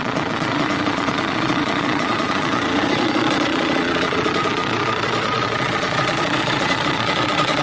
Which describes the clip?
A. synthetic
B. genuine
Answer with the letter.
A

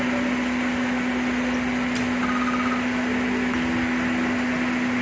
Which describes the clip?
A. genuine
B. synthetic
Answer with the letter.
A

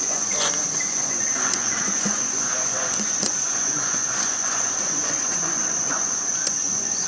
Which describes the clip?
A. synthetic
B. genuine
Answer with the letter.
A